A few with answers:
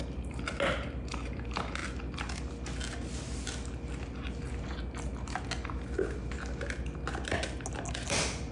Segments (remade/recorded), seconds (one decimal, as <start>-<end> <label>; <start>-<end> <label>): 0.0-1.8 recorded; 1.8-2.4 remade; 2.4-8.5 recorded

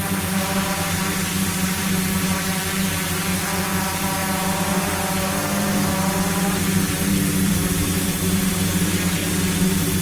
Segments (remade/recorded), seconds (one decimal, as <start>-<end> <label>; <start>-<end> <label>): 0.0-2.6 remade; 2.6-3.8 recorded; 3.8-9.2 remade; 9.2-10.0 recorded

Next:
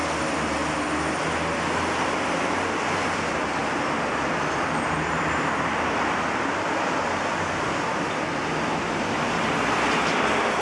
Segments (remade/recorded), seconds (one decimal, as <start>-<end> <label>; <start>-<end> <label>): 0.0-3.6 recorded; 3.6-8.3 remade; 8.3-10.6 recorded